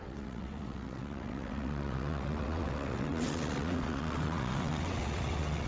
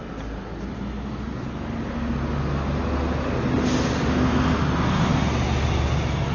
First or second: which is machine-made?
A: first